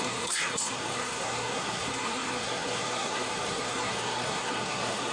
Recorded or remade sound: remade